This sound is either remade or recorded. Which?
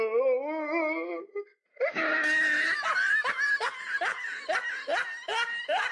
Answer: recorded